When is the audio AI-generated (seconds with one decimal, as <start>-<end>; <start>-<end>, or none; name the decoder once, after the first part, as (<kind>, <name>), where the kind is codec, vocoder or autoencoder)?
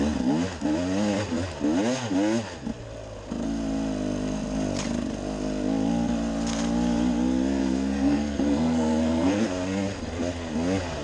7.6-9.5 (codec, SNAC)